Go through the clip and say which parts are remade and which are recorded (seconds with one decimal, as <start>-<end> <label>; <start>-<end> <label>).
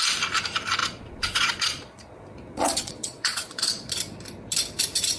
0.0-0.8 recorded; 0.8-3.9 remade; 3.9-5.2 recorded